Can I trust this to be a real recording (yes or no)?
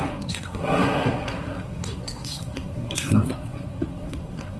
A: no